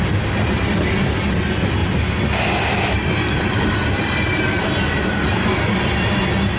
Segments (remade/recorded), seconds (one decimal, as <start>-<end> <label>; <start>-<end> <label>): 0.0-6.6 recorded